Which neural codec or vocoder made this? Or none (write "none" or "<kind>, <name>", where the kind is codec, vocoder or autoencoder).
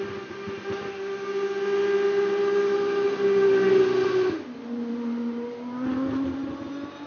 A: none